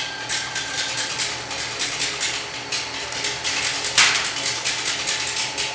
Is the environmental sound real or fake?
real